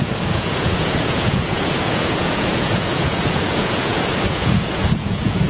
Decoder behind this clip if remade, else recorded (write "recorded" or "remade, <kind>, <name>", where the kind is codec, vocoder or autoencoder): remade, vocoder, Vocos